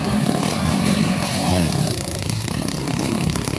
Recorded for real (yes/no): no